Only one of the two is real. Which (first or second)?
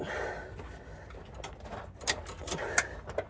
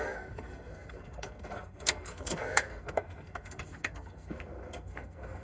first